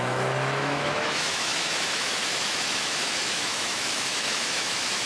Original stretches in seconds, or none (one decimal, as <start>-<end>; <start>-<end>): none